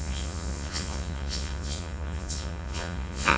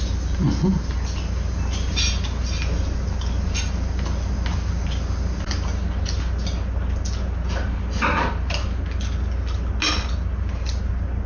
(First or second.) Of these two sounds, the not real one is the first